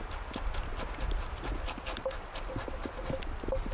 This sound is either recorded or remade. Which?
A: recorded